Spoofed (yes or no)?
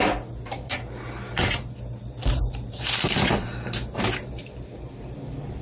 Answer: yes